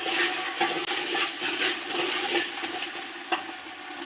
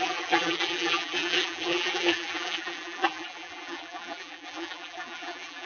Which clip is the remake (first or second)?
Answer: second